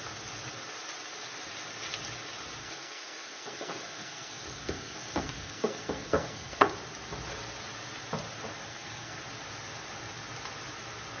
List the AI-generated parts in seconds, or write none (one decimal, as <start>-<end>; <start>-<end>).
2.6-6.7; 8.7-9.2